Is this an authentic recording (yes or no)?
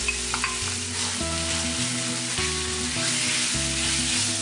yes